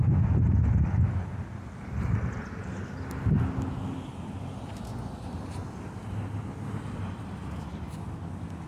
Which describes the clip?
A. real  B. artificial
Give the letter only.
A